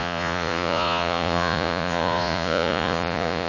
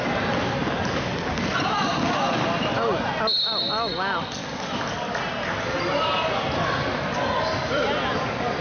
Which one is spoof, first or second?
first